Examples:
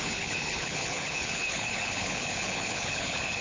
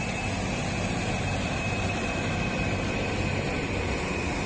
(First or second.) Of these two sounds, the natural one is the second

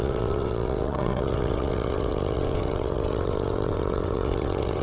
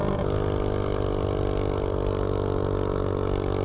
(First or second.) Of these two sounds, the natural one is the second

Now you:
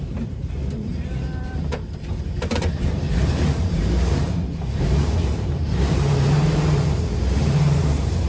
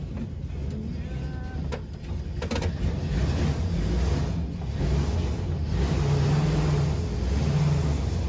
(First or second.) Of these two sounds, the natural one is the second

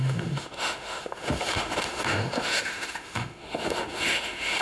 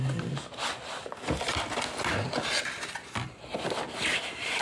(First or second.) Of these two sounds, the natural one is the second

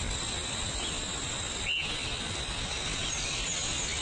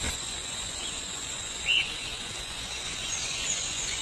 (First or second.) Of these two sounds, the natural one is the first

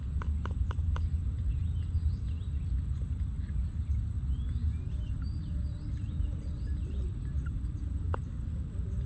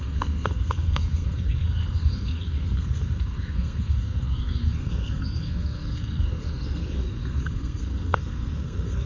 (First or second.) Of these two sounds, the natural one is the first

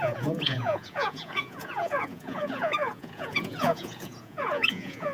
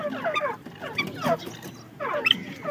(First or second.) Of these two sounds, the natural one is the second